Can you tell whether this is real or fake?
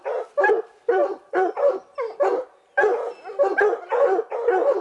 real